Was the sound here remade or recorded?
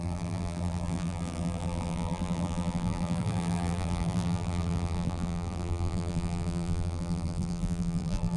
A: remade